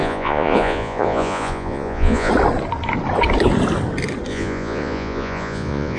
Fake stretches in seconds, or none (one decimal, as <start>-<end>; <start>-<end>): 0.0-2.3; 4.3-6.0